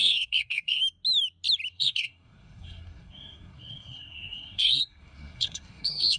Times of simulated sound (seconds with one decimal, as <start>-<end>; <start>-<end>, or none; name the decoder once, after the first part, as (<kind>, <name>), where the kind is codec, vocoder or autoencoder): 0.0-0.8 (codec, SNAC); 1.7-6.2